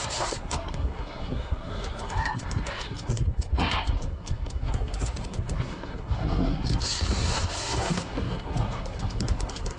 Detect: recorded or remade remade